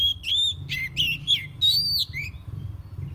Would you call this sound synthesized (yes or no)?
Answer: no